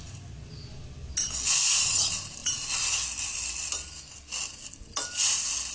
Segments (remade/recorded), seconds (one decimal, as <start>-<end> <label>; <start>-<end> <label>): 0.0-5.7 recorded